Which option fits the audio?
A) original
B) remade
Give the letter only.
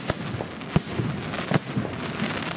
A